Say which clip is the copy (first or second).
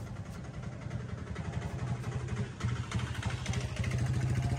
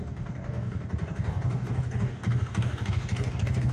second